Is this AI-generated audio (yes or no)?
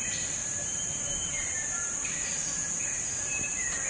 yes